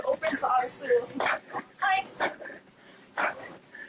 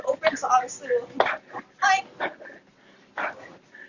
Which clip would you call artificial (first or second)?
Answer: first